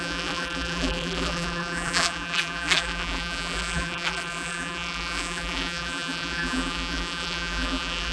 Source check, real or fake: fake